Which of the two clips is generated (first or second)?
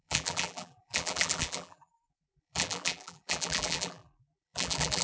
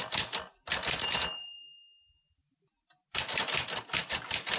first